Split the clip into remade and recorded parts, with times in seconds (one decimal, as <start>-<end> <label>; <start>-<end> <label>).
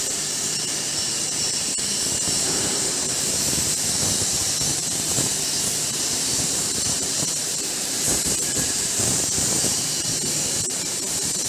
0.0-11.5 remade